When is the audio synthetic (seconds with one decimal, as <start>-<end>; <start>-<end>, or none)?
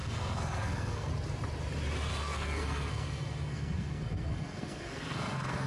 0.0-1.1; 2.1-5.7